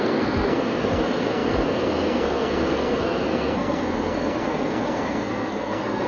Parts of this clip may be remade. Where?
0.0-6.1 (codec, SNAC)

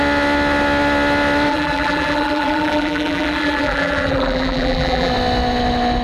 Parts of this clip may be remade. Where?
1.5-5.1 (vocoder, BigVGAN v2)

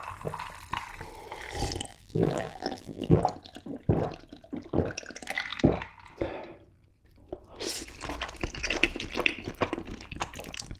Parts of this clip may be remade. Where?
1.9-3.2 (vocoder, BigVGAN v2)

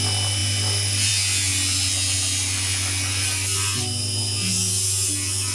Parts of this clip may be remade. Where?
none